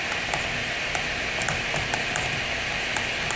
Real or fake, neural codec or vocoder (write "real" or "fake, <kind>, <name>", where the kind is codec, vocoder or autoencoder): real